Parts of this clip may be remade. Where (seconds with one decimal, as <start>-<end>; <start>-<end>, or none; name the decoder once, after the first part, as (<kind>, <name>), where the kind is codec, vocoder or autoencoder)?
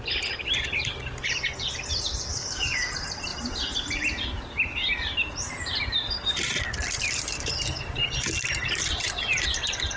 2.3-2.9 (codec, DAC)